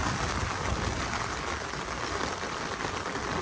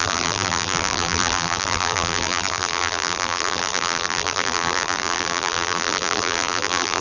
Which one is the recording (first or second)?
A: first